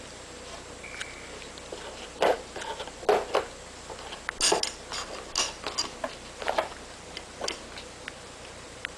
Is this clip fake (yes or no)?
no